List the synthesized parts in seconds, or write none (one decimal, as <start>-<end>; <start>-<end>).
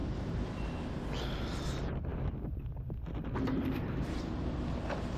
none